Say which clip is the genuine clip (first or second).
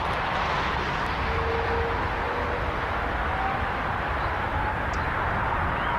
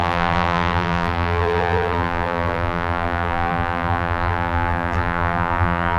first